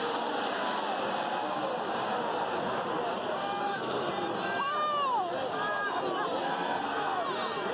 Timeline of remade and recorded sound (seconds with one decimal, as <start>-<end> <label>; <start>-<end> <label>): 0.0-3.6 recorded; 3.6-4.1 remade; 4.1-6.4 recorded; 6.4-7.2 remade; 7.2-7.7 recorded

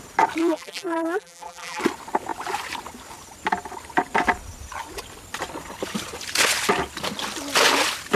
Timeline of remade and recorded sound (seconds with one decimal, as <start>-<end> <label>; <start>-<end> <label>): 0.0-0.4 recorded; 0.4-1.8 remade; 1.8-8.1 recorded

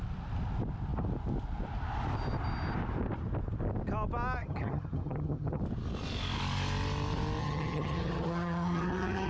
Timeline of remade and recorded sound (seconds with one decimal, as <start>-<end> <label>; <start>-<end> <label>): 0.0-4.4 recorded; 4.4-5.6 remade; 5.6-7.4 recorded; 7.4-9.3 remade

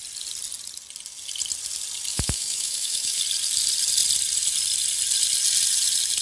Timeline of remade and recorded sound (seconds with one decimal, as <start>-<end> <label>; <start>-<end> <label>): 0.0-2.1 recorded; 2.1-3.2 remade; 3.2-6.2 recorded